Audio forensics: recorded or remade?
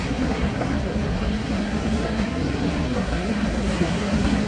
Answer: remade